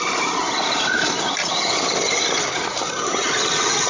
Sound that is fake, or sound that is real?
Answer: real